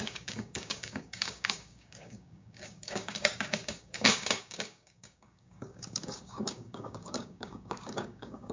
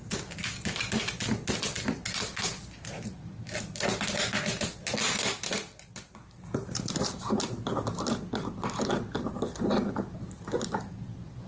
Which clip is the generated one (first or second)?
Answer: first